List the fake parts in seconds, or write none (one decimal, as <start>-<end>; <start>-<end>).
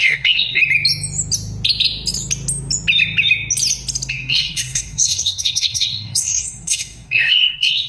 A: 0.0-0.6; 4.1-7.9